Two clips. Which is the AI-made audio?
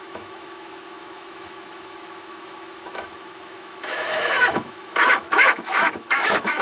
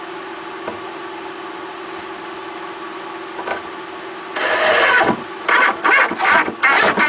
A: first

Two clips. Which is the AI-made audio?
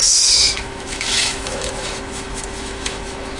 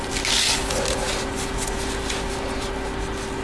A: first